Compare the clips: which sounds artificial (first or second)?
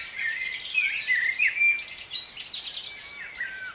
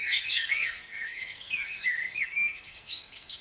second